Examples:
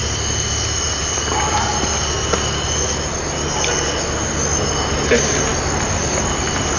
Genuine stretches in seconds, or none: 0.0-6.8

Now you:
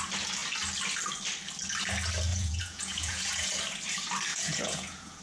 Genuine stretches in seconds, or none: 0.0-2.3; 3.5-4.3

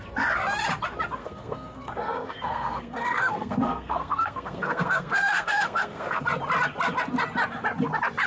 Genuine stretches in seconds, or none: 0.0-1.2; 6.2-8.3